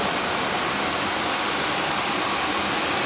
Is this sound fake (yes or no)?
no